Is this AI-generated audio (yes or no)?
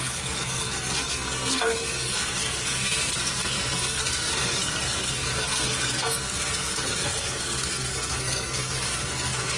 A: yes